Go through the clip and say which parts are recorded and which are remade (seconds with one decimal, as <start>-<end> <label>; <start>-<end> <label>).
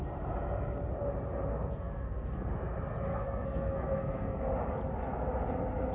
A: 0.0-1.5 recorded; 1.5-2.5 remade; 2.5-3.1 recorded; 3.1-4.4 remade; 4.4-5.9 recorded